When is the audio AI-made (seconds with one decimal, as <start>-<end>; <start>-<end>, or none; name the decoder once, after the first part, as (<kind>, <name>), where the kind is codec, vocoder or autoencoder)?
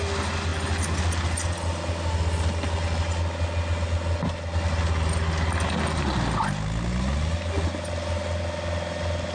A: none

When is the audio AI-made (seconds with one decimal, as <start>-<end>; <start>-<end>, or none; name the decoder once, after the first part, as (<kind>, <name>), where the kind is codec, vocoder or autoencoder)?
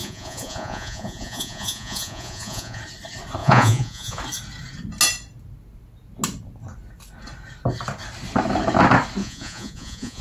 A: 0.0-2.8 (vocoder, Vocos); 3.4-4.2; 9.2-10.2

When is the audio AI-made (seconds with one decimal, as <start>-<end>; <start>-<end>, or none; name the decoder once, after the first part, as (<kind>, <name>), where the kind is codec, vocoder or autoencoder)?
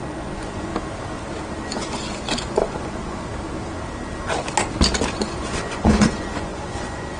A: 0.0-0.7 (vocoder, Vocos); 1.6-3.3; 5.2-7.2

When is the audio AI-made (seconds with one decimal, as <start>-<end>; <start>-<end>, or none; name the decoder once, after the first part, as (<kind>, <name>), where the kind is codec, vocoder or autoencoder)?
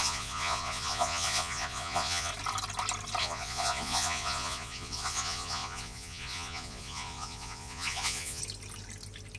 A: 0.0-2.3 (vocoder, Vocos); 3.2-8.4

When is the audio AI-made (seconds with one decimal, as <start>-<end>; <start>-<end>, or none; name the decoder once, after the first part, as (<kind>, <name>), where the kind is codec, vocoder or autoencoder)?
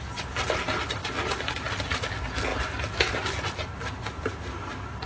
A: none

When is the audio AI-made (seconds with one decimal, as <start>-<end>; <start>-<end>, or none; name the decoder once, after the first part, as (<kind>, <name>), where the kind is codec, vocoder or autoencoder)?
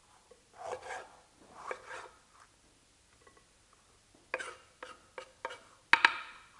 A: none